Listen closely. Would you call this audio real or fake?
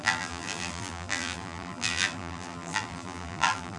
fake